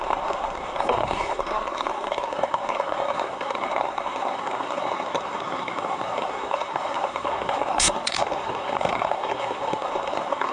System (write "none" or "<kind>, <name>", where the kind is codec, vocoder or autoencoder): codec, SNAC